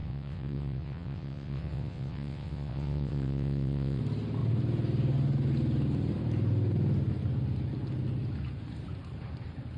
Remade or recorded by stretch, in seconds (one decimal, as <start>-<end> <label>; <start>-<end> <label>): 0.0-4.0 remade; 4.0-9.8 recorded